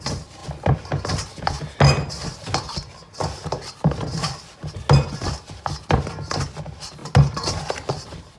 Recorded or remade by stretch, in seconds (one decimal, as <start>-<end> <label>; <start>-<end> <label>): 0.0-8.4 recorded